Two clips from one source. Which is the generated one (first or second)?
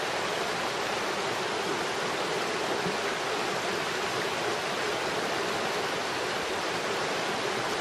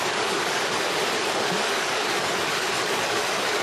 second